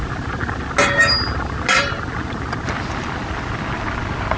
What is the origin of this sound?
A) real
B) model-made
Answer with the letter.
A